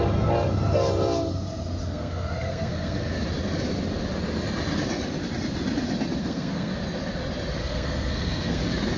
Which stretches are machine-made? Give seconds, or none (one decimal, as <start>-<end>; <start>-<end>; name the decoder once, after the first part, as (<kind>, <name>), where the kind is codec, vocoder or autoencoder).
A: 1.8-3.1 (codec, SNAC); 6.2-6.7; 7.6-8.6